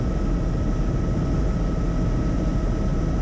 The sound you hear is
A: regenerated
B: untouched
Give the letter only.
B